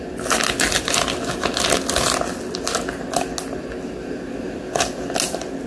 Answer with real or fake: real